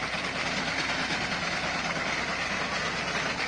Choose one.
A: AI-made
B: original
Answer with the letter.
B